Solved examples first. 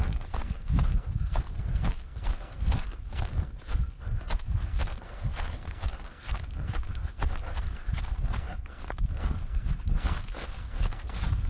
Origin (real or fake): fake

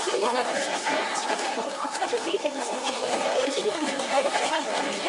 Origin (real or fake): fake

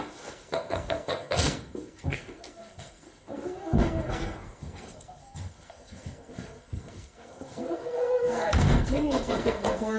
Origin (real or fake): fake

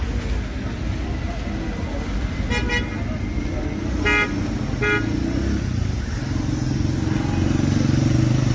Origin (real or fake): real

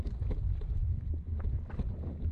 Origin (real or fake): real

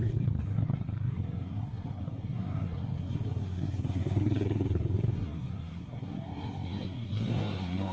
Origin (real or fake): fake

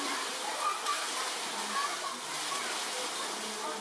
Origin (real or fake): real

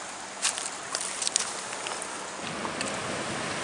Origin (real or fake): real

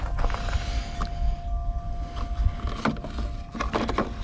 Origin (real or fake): real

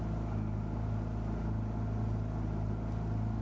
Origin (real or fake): real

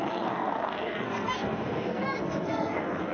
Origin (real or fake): fake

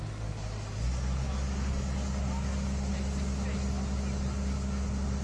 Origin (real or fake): real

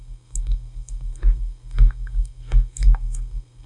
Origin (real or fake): fake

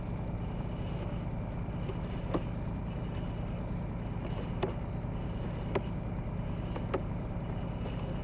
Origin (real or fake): real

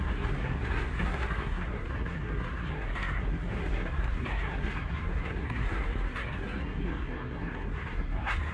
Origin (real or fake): fake